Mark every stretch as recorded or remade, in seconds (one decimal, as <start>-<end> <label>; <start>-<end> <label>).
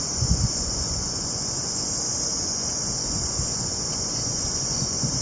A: 0.0-5.2 remade